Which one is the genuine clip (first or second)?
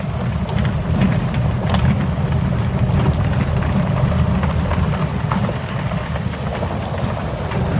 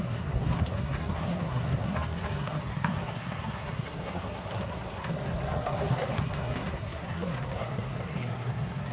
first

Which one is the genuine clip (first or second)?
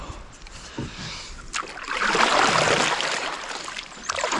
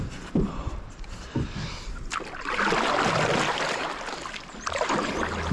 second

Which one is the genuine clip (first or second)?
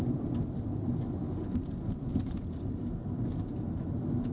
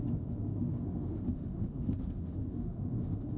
first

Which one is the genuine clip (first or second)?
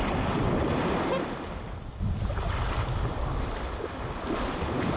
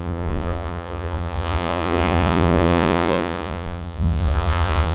first